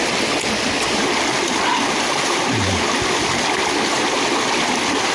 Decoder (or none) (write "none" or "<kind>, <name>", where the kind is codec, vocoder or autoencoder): none